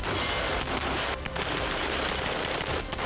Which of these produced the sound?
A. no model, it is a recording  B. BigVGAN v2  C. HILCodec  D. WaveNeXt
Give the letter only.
A